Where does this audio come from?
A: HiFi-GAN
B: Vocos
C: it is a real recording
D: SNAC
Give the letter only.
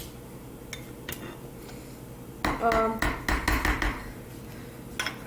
C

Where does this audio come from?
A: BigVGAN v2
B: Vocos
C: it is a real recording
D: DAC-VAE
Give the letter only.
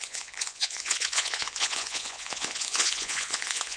B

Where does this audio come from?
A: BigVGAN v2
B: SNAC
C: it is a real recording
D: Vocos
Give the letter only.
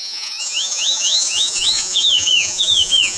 D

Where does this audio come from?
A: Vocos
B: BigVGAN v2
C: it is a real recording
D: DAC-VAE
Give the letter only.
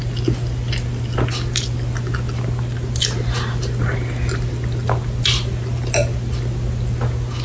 C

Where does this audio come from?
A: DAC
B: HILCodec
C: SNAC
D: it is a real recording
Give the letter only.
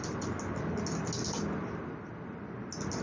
D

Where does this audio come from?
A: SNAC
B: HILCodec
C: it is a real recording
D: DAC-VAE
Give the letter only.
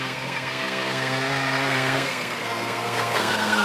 A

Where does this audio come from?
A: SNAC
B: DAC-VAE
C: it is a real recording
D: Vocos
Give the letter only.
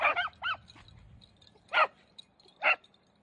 C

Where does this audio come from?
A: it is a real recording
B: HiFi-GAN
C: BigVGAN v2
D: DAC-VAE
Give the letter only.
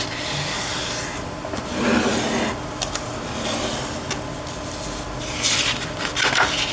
A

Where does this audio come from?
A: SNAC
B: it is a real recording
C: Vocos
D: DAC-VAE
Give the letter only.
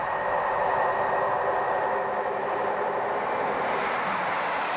B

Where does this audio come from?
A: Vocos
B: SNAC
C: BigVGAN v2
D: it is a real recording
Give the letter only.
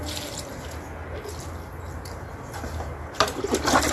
D